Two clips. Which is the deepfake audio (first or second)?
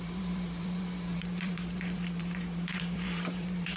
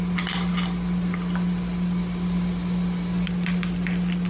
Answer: first